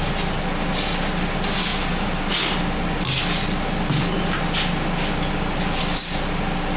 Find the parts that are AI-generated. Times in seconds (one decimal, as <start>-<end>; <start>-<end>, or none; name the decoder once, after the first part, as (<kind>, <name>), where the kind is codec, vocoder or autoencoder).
none

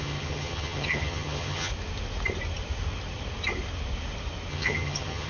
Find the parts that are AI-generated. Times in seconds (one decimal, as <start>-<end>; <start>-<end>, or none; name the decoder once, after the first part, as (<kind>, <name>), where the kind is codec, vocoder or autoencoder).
0.0-1.7 (vocoder, HiFi-GAN); 4.5-5.3

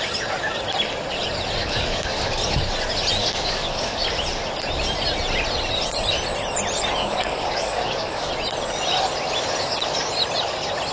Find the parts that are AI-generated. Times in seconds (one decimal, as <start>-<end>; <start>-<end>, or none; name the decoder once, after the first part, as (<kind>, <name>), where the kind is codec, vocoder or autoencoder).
1.6-2.4 (codec, DAC); 3.2-4.0; 7.0-8.3

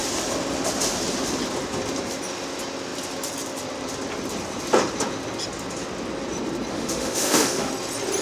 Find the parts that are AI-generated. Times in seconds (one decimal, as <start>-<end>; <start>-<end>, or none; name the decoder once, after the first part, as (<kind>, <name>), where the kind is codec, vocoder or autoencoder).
6.7-7.7 (autoencoder, DAC-VAE)